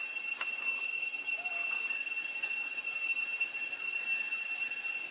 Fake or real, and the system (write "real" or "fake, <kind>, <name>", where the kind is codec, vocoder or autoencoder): real